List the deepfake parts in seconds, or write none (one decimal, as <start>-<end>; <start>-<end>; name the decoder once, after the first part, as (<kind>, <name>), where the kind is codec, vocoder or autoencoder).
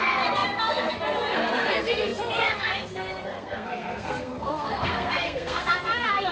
0.0-6.3 (codec, SNAC)